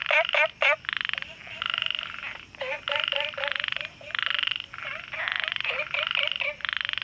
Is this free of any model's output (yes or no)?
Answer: yes